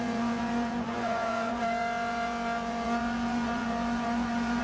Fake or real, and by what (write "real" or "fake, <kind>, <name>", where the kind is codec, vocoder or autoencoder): fake, vocoder, Vocos